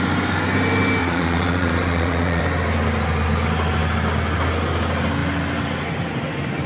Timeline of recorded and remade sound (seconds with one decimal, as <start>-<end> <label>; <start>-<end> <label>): 0.0-1.0 recorded; 1.0-2.4 remade; 2.4-6.7 recorded

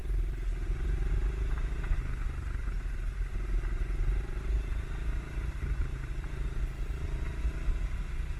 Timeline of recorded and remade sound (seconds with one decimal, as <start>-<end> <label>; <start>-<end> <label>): 0.0-1.1 remade; 1.1-2.4 recorded; 2.4-3.0 remade; 3.0-5.9 recorded; 5.9-7.3 remade; 7.3-8.4 recorded

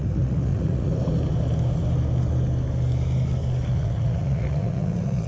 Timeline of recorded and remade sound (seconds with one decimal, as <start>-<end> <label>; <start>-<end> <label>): 0.0-0.9 remade; 0.9-3.7 recorded; 3.7-5.3 remade